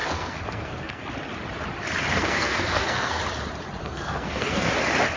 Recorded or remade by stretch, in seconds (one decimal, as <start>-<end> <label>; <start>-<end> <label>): 0.0-1.0 remade; 1.0-2.1 recorded; 2.1-3.2 remade; 3.2-3.8 recorded; 3.8-4.7 remade; 4.7-5.2 recorded